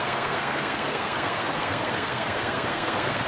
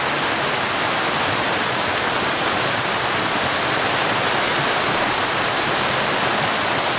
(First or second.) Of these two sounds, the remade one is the first